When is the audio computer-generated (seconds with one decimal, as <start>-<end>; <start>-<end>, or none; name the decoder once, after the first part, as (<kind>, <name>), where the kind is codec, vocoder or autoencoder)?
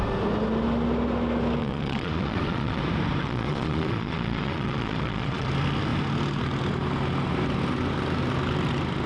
1.6-2.8 (vocoder, Vocos); 3.2-5.5